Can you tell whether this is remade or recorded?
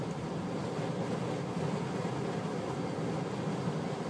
recorded